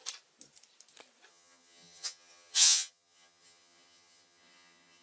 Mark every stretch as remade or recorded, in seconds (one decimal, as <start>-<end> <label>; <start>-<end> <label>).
0.0-1.3 recorded; 1.3-5.0 remade